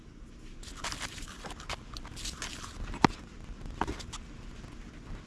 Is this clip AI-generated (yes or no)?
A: no